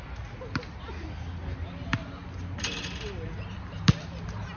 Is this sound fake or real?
real